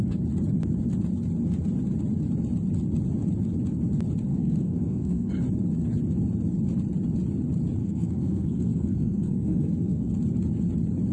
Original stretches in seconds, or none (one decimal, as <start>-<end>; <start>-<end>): 0.0-4.3; 5.3-7.8; 10.1-11.1